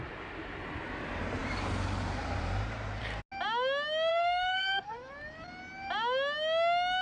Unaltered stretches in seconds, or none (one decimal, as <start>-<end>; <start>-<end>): 0.0-4.1; 5.1-7.0